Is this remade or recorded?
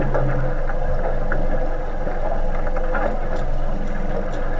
recorded